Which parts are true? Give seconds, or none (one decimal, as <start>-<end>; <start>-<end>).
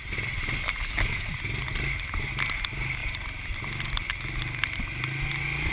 0.0-5.7